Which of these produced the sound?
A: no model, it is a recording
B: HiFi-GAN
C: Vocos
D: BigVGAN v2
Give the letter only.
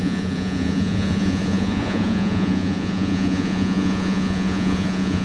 C